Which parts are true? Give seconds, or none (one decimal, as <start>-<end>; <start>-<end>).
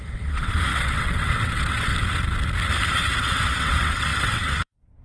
1.9-2.9